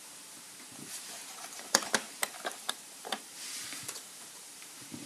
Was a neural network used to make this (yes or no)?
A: yes